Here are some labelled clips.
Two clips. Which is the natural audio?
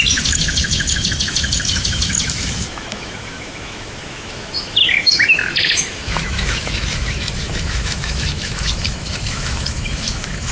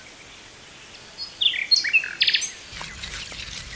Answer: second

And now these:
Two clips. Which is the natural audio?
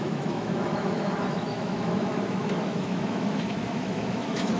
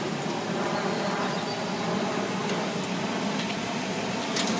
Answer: second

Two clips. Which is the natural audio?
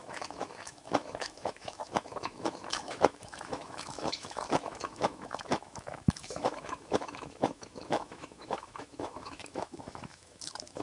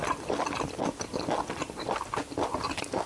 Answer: second